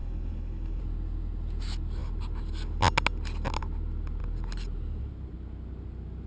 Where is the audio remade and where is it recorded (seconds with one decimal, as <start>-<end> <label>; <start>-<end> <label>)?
0.0-0.8 remade; 0.8-6.3 recorded